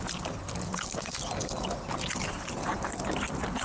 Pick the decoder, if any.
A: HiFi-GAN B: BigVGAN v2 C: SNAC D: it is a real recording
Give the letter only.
D